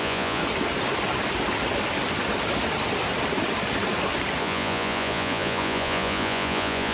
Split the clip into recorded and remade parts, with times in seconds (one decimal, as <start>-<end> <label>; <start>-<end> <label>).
0.0-0.4 remade; 0.4-4.4 recorded; 4.4-6.9 remade